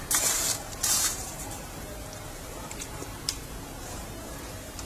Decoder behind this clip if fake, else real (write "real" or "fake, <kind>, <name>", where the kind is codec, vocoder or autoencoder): fake, vocoder, BigVGAN v2